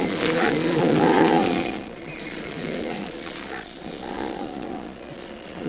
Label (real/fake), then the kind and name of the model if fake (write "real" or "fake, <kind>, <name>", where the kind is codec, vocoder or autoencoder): fake, vocoder, Vocos